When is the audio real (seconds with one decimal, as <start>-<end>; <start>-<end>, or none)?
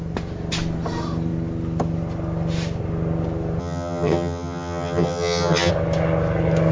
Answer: 0.0-3.6; 5.7-6.7